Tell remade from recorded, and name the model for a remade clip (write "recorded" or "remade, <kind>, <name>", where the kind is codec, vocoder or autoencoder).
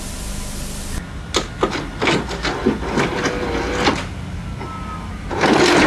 recorded